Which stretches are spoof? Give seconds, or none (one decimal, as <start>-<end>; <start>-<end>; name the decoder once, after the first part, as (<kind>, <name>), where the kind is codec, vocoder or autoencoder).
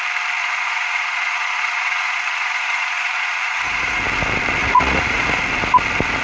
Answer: 0.4-4.0 (vocoder, Vocos); 4.6-5.4